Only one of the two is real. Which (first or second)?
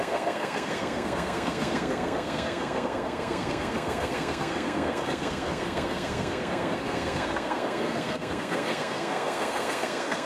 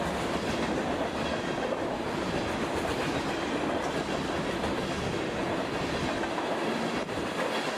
second